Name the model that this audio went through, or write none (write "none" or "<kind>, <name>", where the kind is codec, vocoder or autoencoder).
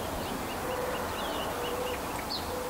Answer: none